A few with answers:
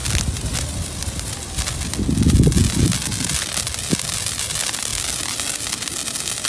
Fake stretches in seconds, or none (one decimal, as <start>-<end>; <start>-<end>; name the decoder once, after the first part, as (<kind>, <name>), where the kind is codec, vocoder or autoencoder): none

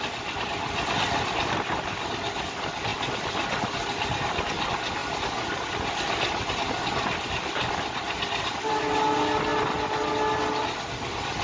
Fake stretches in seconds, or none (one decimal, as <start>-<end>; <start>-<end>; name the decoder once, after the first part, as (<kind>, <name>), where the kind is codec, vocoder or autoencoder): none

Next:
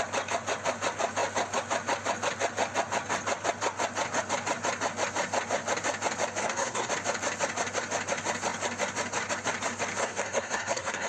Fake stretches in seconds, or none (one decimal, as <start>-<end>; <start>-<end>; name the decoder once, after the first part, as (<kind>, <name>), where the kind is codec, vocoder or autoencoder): 6.4-6.9 (codec, SNAC); 10.0-11.1

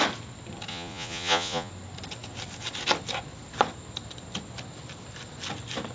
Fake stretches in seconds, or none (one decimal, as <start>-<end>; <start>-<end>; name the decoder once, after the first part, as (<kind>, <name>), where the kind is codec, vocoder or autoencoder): 0.7-1.7 (vocoder, Vocos)

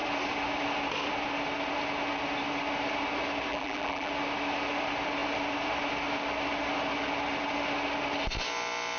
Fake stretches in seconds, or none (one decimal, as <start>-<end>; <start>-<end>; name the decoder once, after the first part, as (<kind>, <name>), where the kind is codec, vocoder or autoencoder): 3.5-4.1 (vocoder, BigVGAN v2)